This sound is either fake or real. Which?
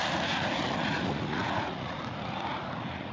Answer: fake